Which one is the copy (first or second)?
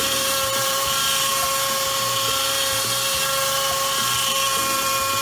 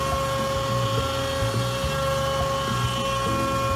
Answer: first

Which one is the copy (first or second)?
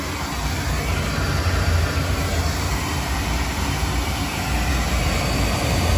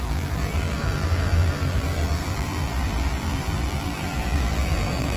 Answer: second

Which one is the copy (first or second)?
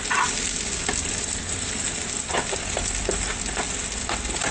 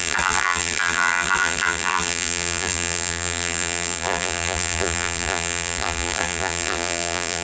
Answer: second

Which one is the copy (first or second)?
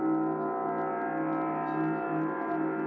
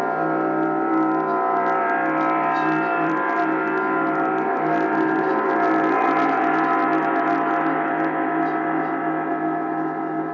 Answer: second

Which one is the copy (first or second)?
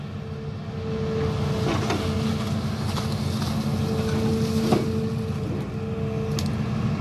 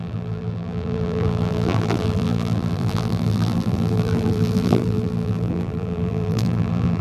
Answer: second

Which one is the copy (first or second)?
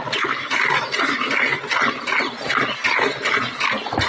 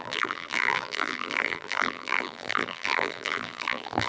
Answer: second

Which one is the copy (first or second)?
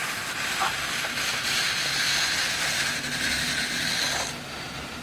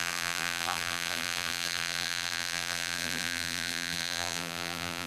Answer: second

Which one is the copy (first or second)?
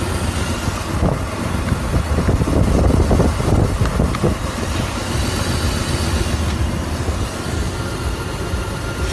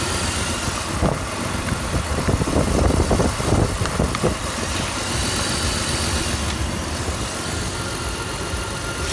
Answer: second